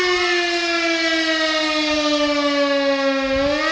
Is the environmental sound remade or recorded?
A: recorded